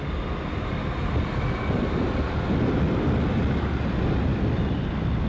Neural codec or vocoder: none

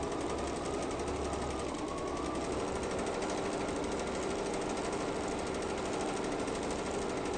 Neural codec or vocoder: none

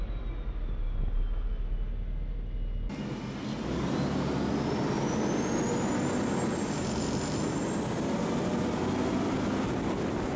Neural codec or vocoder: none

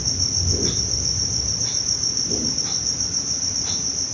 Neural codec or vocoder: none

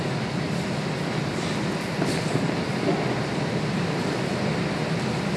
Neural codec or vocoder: none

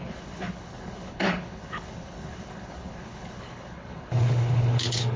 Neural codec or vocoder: codec, HILCodec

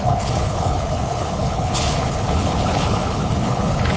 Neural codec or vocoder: codec, HILCodec